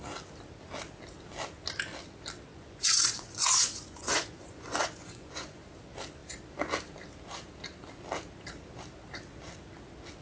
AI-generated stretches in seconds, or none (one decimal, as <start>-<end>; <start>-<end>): 2.5-5.6